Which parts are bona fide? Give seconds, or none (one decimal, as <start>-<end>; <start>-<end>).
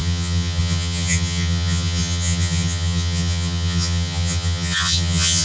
none